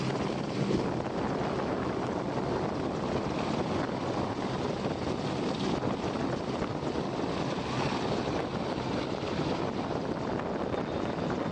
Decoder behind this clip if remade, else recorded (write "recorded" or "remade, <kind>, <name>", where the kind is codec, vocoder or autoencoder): recorded